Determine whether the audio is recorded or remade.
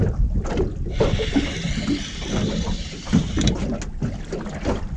recorded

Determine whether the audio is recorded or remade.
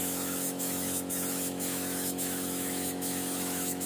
remade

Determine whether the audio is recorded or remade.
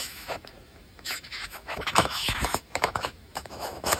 remade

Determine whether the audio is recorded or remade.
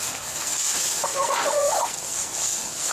remade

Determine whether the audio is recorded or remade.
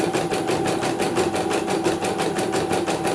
recorded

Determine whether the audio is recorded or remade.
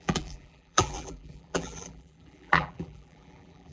remade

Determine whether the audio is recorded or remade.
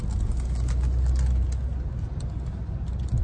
recorded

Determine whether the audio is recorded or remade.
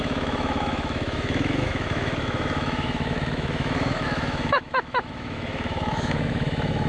remade